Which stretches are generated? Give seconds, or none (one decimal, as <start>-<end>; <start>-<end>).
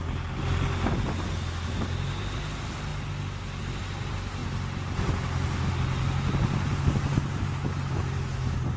none